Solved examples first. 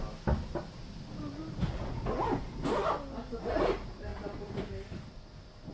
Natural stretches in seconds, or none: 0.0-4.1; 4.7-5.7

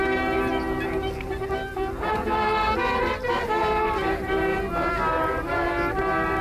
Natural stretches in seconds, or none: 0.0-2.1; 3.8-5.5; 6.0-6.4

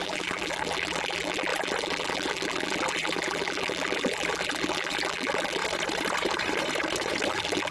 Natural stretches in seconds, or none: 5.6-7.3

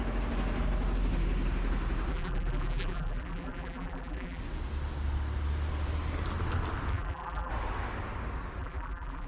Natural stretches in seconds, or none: 0.0-2.1; 4.4-6.9; 7.5-8.6

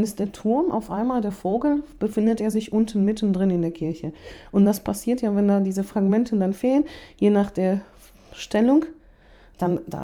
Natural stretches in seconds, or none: 5.2-6.1; 7.0-9.6

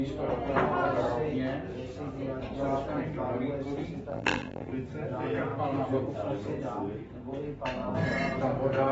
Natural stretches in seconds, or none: 0.0-4.1; 4.7-8.9

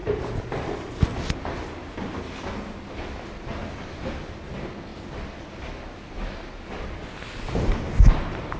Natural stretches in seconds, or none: 0.0-3.6; 4.2-4.9; 5.5-8.6

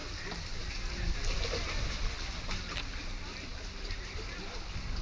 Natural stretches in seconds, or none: 0.0-5.0